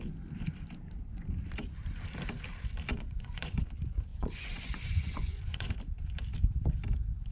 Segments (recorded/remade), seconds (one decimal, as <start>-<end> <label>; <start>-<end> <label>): 0.0-2.9 recorded; 2.9-3.6 remade; 3.6-4.1 recorded; 4.1-5.7 remade; 5.7-7.3 recorded